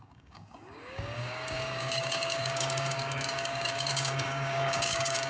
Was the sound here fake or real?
fake